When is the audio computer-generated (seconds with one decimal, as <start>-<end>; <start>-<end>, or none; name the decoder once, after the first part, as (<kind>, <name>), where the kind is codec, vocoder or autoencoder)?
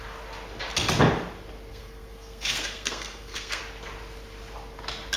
1.7-3.6 (codec, SNAC)